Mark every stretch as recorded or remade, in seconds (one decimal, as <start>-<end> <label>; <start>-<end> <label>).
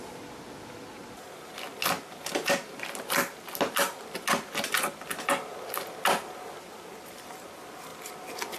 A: 0.0-8.6 recorded